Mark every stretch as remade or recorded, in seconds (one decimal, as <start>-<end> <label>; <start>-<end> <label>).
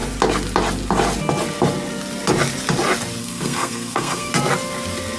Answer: 0.0-3.2 recorded; 3.2-4.3 remade; 4.3-5.2 recorded